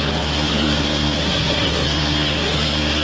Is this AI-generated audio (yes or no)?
yes